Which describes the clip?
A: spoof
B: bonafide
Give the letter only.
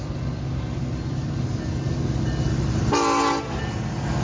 B